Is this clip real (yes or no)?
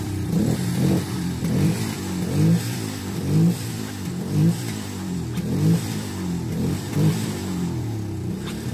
no